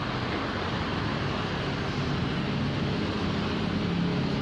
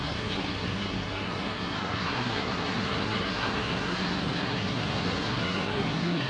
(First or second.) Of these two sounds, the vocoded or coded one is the second